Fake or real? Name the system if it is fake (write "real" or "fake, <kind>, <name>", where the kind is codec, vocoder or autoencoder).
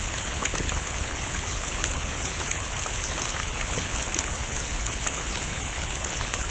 fake, codec, HILCodec